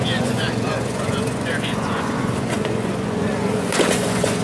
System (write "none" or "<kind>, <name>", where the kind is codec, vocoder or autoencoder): vocoder, Vocos